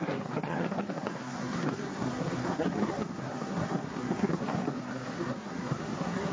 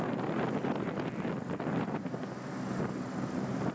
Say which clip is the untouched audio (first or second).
second